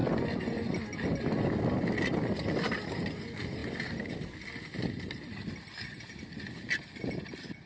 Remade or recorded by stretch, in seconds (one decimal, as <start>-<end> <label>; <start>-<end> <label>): 0.0-7.7 recorded